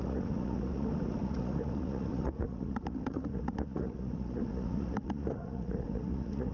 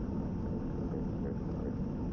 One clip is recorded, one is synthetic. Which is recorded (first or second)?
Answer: second